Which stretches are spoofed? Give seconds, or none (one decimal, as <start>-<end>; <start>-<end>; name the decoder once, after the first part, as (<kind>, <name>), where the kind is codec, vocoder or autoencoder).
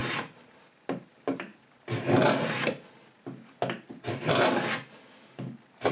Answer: 0.0-0.8 (vocoder, BigVGAN v2)